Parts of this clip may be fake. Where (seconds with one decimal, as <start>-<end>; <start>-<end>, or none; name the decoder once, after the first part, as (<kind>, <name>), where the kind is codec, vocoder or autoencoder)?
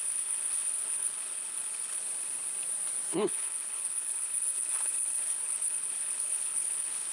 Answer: 0.0-2.0 (codec, HILCodec); 3.1-7.1